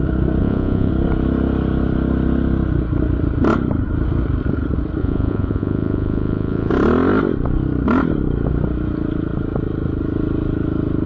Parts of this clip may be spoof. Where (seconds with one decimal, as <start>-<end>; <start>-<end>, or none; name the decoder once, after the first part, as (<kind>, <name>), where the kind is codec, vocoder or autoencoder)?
0.4-0.9 (vocoder, Vocos); 5.0-6.7